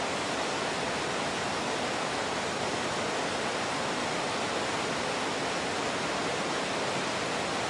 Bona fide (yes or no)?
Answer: yes